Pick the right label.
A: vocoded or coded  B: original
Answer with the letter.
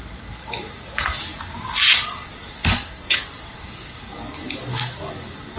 A